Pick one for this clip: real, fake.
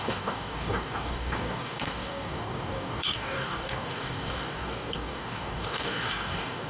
fake